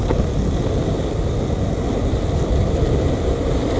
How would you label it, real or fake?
real